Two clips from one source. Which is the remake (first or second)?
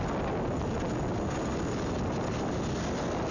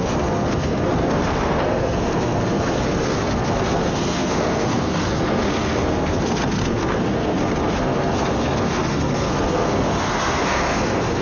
second